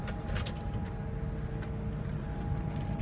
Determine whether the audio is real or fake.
real